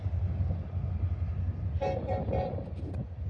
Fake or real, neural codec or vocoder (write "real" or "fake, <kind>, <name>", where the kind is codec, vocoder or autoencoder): real